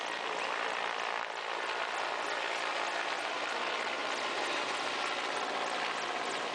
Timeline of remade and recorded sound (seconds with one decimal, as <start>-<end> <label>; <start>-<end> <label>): 0.0-6.5 recorded